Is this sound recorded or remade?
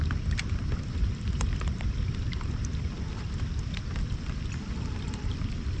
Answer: remade